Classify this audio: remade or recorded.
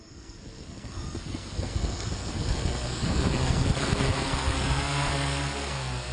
remade